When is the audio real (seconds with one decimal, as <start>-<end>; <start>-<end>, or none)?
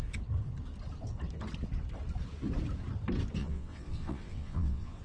0.0-3.4